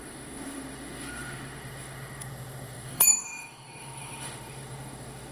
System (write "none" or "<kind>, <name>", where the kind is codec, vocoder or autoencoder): autoencoder, DAC-VAE